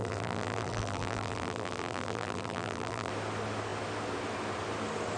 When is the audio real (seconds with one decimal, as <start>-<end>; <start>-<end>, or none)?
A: 3.1-5.2